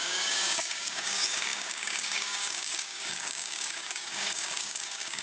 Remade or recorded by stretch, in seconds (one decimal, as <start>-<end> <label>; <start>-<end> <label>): 0.0-5.2 remade